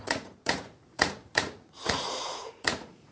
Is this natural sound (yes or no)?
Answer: no